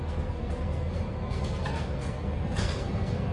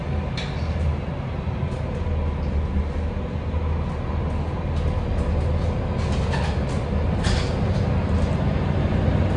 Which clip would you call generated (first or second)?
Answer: first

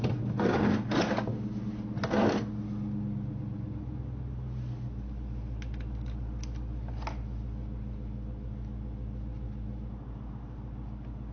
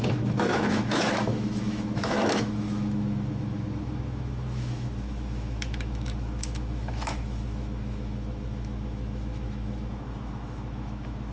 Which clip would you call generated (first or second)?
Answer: second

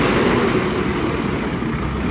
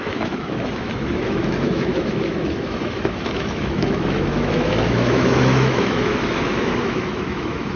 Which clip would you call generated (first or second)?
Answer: second